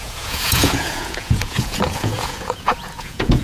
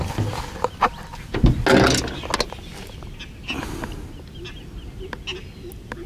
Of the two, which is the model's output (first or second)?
first